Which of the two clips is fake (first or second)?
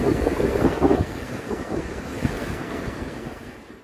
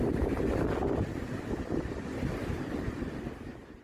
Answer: first